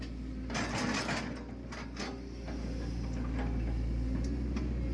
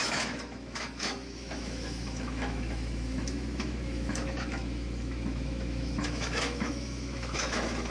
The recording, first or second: first